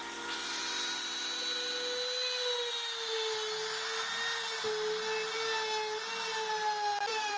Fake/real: real